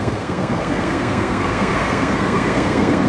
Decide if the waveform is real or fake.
fake